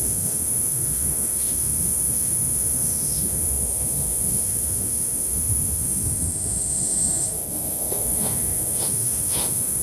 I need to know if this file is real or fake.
fake